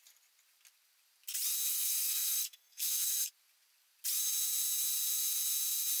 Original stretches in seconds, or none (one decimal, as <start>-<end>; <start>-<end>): 0.0-1.7; 3.3-6.0